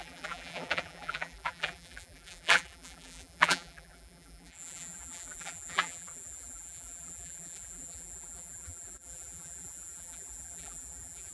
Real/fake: fake